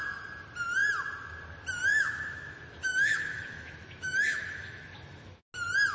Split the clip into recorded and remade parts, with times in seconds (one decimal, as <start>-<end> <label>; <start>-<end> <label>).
0.0-1.9 recorded; 1.9-5.4 remade; 5.4-5.9 recorded